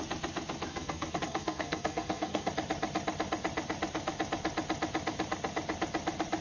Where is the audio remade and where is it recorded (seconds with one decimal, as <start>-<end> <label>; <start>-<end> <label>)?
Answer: 0.0-0.7 recorded; 0.7-2.5 remade; 2.5-6.4 recorded